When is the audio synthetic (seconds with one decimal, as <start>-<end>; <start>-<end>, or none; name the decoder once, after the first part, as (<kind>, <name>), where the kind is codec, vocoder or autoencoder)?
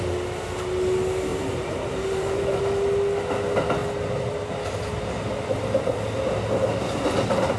1.3-2.6 (vocoder, BigVGAN v2)